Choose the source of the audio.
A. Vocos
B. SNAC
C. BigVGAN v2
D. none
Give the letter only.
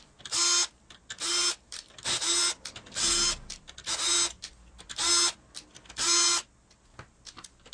D